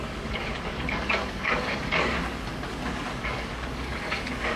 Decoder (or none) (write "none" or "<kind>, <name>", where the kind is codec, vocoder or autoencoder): codec, DAC